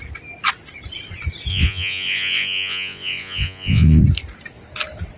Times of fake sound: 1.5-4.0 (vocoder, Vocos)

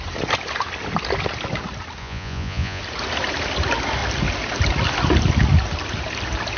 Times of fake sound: 2.0-2.8 (vocoder, Vocos)

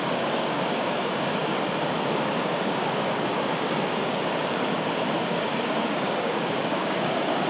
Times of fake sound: 0.0-7.5 (codec, DAC)

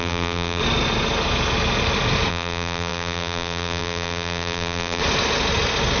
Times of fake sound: 0.0-0.6 (vocoder, BigVGAN v2); 2.3-5.0

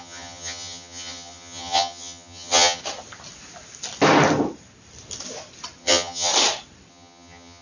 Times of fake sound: 0.0-2.8 (vocoder, HiFi-GAN); 5.8-6.3; 6.9-7.6

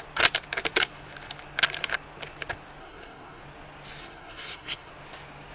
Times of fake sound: 2.8-3.4 (codec, SNAC); 4.0-4.9

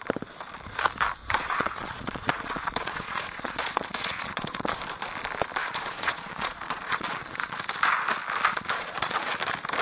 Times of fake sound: 1.2-4.8 (vocoder, Vocos); 5.6-7.6; 8.5-9.3

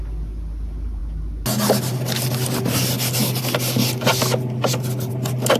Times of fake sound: none